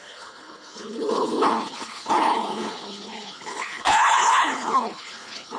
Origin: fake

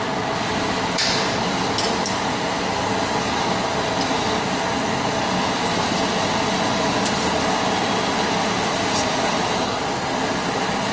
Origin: real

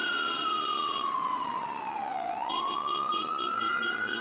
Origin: fake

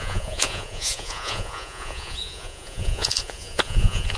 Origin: fake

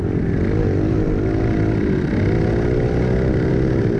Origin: real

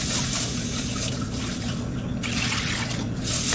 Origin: real